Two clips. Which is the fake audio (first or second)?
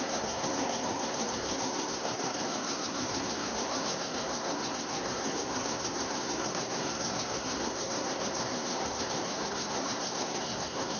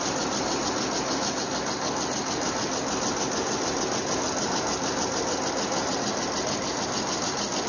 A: first